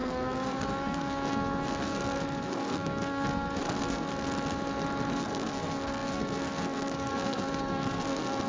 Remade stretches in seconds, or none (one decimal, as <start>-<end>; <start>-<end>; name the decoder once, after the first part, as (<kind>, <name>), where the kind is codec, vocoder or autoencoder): 0.0-4.1 (codec, SNAC); 5.1-8.5